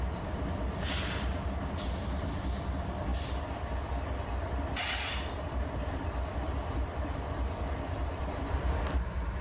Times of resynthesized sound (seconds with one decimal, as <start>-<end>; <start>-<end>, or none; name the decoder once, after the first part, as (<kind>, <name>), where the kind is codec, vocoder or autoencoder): 0.0-9.4 (vocoder, BigVGAN v2)